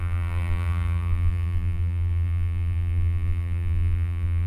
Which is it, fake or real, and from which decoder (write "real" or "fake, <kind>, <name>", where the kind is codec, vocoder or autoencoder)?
fake, vocoder, BigVGAN v2